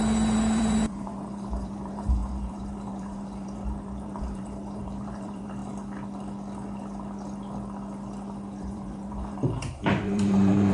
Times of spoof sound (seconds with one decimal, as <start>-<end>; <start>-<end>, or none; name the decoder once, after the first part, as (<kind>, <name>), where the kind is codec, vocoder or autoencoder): 0.0-5.6 (vocoder, BigVGAN v2); 8.6-10.7